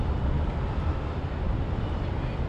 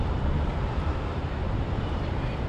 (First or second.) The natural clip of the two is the first